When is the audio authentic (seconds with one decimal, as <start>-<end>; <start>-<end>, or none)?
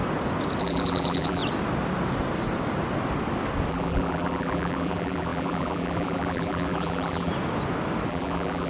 0.0-0.6; 1.4-3.7; 7.3-8.1